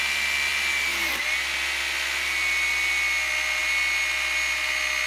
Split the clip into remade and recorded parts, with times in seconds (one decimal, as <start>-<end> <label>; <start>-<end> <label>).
0.0-5.1 recorded